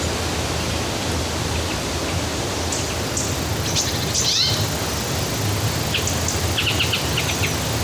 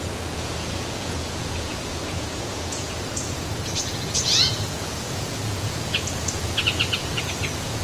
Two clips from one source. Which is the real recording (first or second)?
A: first